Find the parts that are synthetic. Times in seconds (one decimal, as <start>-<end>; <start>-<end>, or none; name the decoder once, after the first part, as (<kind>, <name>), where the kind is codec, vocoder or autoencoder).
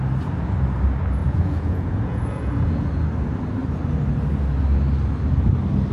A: 1.2-3.0 (vocoder, Vocos)